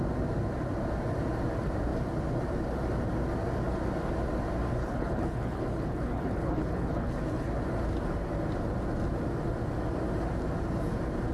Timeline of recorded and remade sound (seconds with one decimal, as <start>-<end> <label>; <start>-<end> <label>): 0.0-4.8 recorded; 4.8-7.5 remade; 7.5-11.3 recorded